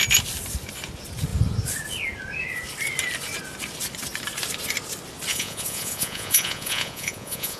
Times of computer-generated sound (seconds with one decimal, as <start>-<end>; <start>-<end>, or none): 5.3-7.6